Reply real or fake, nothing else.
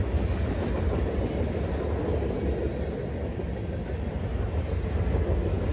real